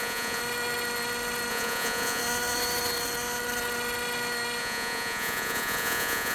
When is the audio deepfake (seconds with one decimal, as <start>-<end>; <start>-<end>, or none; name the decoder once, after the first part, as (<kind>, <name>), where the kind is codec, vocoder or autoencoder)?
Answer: 0.0-0.4 (vocoder, Vocos); 1.5-2.2; 4.6-6.3